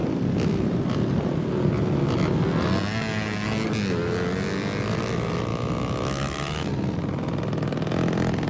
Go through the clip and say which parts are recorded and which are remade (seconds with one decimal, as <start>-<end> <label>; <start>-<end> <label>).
0.0-5.5 recorded; 5.5-6.7 remade; 6.7-8.5 recorded